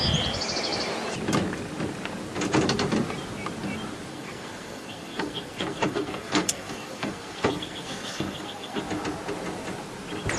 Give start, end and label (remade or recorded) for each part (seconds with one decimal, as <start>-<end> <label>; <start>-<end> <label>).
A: 0.0-4.1 recorded; 4.1-8.8 remade; 8.8-10.4 recorded